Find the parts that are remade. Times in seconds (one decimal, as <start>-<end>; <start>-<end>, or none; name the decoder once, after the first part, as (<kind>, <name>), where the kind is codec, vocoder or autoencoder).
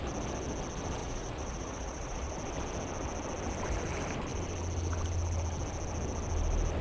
1.0-2.3 (vocoder, Vocos)